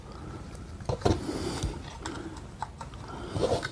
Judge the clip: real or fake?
real